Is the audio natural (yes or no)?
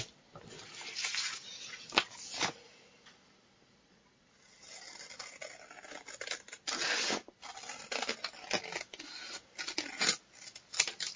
yes